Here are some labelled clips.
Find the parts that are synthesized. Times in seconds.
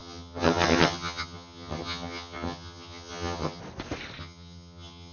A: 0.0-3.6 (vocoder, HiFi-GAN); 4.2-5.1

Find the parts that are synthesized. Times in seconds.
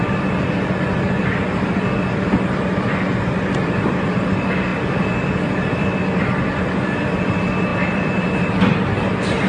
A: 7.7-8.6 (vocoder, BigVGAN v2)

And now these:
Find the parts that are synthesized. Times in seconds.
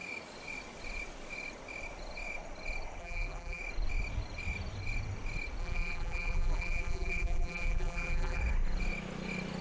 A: 3.0-3.6 (vocoder, BigVGAN v2); 5.6-8.4